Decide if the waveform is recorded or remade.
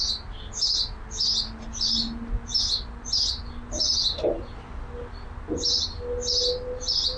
recorded